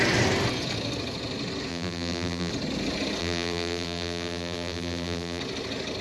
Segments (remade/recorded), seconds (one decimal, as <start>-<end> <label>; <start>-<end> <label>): 0.0-1.7 recorded; 1.7-2.5 remade; 2.5-3.2 recorded; 3.2-5.4 remade; 5.4-6.0 recorded